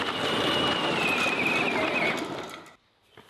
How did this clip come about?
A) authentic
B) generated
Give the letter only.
A